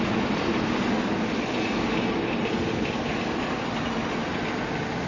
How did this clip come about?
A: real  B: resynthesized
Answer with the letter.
A